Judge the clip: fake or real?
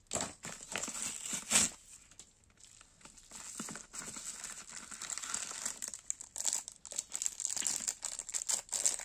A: real